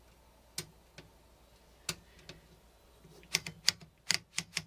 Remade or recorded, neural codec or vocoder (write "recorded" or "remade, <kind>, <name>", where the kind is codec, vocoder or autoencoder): recorded